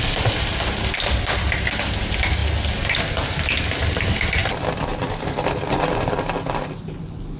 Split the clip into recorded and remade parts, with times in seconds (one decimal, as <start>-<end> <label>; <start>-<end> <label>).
0.0-7.4 recorded